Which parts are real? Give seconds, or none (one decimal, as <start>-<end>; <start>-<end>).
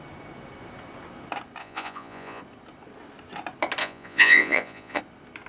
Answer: 0.0-1.6; 2.4-3.8; 5.0-5.5